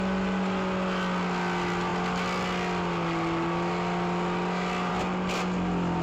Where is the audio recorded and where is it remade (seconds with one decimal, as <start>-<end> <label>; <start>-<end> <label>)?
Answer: 0.0-6.0 recorded